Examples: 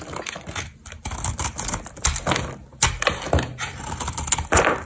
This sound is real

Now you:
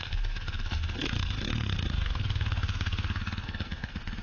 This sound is fake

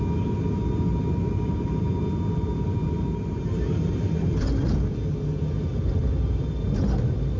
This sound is real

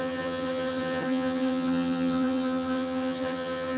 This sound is fake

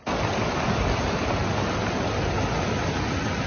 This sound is real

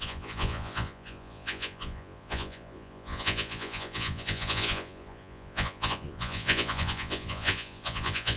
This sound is fake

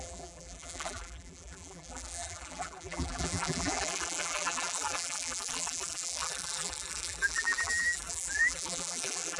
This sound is fake